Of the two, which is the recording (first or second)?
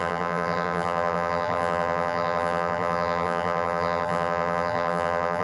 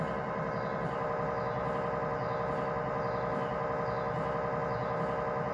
second